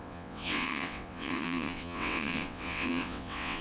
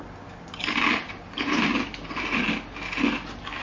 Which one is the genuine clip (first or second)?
second